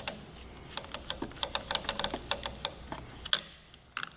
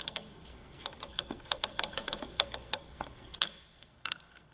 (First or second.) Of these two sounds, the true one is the first